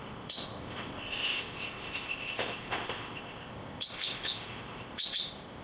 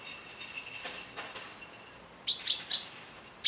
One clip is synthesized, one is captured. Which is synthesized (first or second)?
first